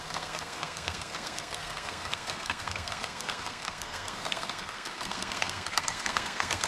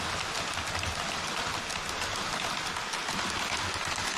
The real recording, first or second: second